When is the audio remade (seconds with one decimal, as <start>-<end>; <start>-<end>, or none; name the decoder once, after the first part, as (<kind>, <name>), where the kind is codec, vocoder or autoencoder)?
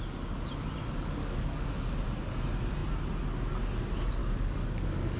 1.2-1.8 (codec, DAC); 4.2-5.2